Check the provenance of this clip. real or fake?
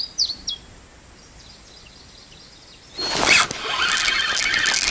real